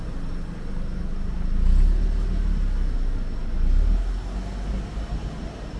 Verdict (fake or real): real